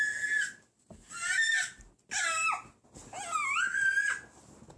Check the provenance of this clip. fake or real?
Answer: real